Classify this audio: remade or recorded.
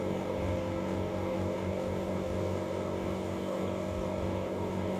remade